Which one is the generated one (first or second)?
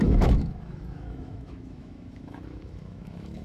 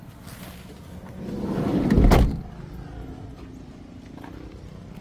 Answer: first